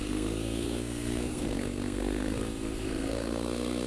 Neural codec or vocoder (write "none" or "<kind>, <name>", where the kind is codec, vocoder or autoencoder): codec, SNAC